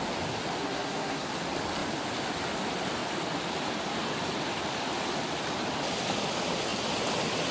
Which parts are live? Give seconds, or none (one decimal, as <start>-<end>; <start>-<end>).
0.0-0.6; 1.3-7.5